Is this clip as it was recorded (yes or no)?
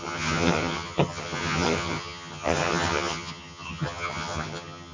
no